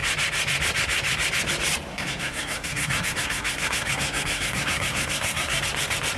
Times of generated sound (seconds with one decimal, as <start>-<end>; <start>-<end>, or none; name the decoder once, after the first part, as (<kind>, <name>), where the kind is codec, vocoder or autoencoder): 1.9-5.6 (codec, SNAC)